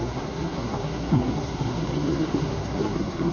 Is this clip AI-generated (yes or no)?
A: yes